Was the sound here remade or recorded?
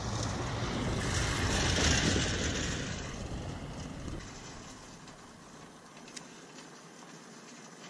recorded